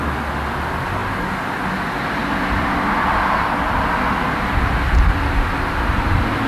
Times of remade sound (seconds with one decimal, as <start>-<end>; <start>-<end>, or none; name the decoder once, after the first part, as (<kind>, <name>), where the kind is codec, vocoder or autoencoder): none